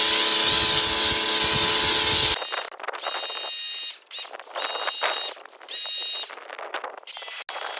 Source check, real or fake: real